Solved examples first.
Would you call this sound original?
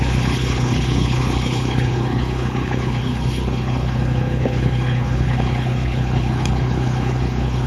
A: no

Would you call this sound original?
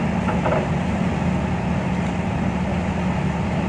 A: yes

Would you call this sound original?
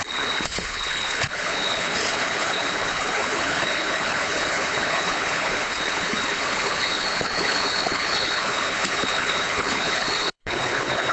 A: no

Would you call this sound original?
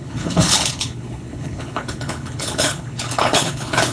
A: no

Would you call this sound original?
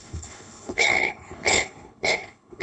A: no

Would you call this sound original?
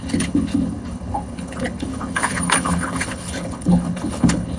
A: no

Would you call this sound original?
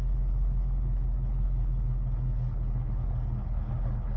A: no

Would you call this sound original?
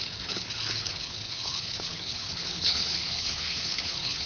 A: no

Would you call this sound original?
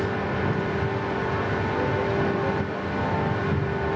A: yes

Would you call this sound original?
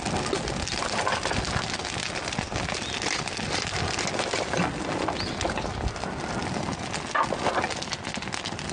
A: yes